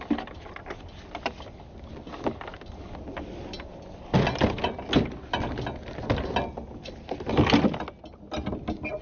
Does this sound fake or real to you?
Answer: real